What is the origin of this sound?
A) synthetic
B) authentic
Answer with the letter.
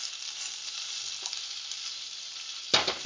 B